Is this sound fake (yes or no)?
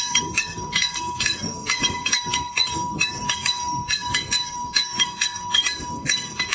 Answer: yes